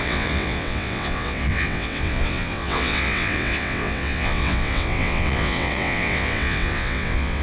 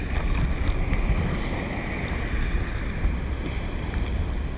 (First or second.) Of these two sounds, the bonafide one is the second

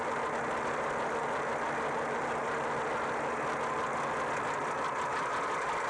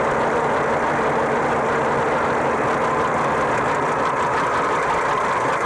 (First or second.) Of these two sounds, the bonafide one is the first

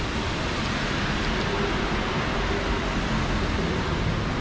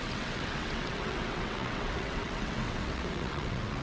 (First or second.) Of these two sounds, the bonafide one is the first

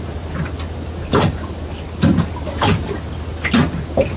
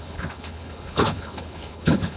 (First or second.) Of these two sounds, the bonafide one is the first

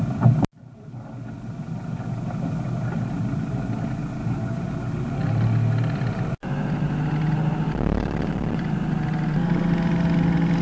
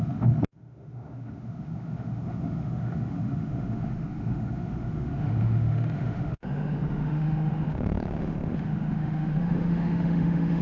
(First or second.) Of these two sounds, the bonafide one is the first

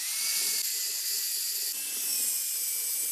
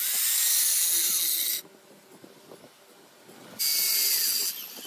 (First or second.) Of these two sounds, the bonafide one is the second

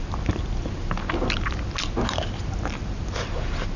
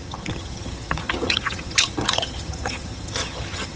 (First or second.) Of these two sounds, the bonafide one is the first